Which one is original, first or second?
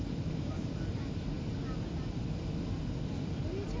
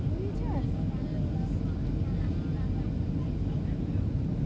second